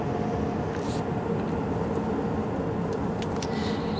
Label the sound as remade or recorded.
recorded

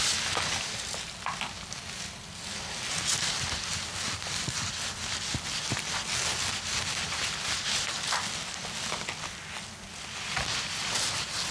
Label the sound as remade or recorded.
recorded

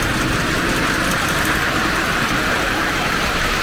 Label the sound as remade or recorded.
recorded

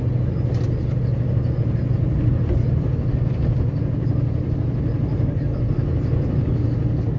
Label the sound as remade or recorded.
recorded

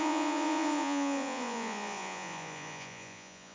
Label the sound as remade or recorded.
remade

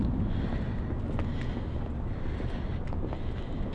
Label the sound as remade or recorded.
recorded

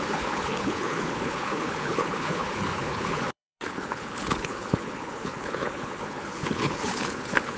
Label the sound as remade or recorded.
remade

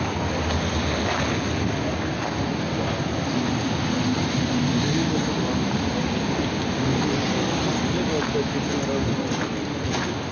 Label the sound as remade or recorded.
recorded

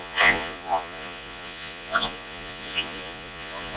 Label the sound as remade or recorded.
remade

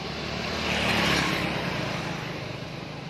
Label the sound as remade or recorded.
remade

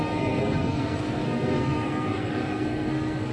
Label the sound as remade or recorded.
remade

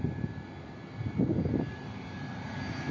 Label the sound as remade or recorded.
recorded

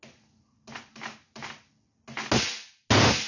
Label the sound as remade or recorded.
recorded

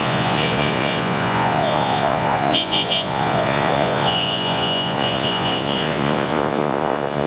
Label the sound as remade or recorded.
remade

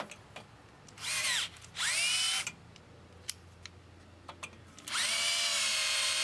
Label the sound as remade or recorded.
recorded